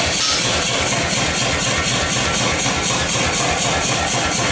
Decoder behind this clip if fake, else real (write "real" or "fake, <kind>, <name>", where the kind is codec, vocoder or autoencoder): real